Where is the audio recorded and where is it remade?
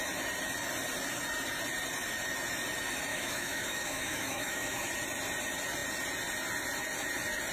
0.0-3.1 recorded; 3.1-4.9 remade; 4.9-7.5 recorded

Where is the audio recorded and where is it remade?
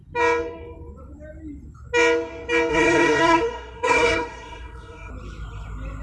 0.0-2.7 recorded; 2.7-5.1 remade; 5.1-6.0 recorded